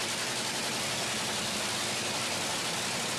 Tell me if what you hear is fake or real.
real